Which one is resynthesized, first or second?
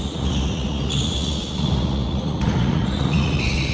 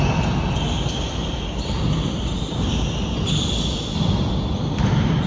first